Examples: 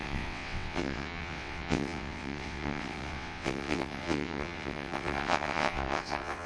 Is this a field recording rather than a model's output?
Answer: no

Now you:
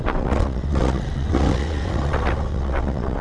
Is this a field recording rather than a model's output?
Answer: no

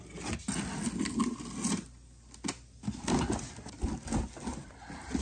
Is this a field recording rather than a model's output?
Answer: yes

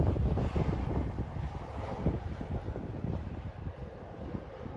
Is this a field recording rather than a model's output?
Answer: yes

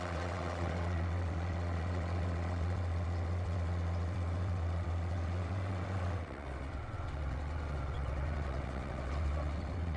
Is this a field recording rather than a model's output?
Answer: no